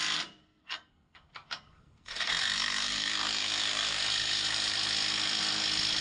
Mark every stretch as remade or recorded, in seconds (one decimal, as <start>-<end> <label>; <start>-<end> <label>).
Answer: 0.0-0.4 recorded; 0.4-4.0 remade; 4.0-6.0 recorded